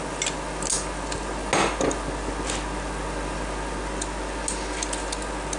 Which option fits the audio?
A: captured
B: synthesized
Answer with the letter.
A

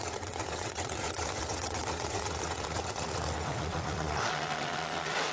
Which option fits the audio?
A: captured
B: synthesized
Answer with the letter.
B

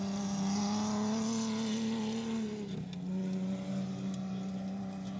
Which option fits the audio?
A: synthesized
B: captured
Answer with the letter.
B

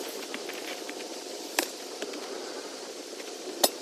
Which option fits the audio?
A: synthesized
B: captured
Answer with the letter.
A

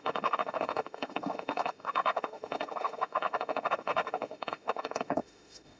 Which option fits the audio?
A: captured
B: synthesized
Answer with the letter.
B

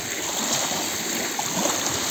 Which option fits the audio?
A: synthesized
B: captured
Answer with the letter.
B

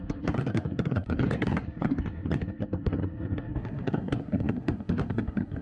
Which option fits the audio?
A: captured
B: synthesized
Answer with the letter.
B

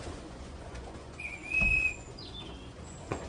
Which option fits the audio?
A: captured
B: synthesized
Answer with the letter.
B